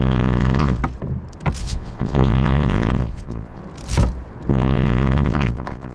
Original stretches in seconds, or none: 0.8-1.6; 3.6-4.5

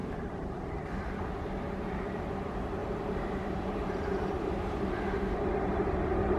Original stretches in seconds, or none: 0.6-2.8; 5.9-6.4

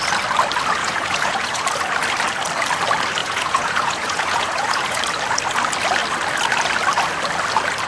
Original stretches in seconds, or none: 0.0-0.8; 1.6-3.2; 5.0-7.9

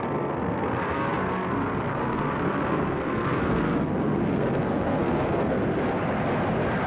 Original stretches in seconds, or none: 5.6-6.9

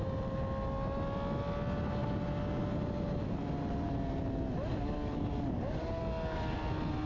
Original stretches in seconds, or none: 0.0-4.7; 6.0-7.1

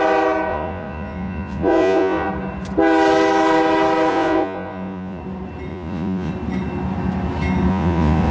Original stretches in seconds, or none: 0.0-0.5; 2.3-4.1; 5.2-5.7; 6.3-7.7

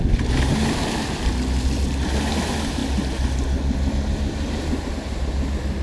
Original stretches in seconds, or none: 0.0-5.8

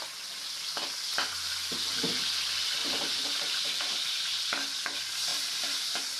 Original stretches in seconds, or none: 0.0-2.8; 4.4-5.3